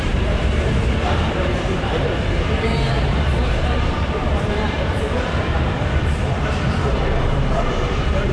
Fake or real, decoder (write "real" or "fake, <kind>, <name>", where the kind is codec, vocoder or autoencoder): fake, vocoder, BigVGAN v2